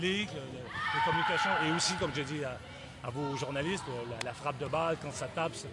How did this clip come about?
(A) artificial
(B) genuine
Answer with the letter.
B